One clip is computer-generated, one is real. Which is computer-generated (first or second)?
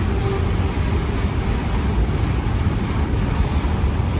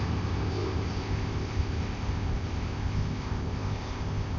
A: second